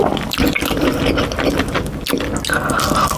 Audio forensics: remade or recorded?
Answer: recorded